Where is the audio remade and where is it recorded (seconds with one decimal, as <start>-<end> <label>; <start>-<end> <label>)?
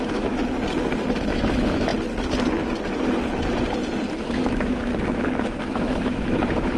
0.0-0.4 remade; 0.4-1.3 recorded; 1.3-1.9 remade; 1.9-4.1 recorded; 4.1-4.9 remade; 4.9-5.4 recorded; 5.4-6.8 remade